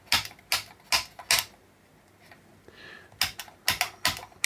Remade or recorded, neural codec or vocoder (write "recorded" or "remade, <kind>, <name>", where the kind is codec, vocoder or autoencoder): recorded